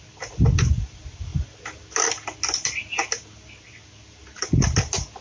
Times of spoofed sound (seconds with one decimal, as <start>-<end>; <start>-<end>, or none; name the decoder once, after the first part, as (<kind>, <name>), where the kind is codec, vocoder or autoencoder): none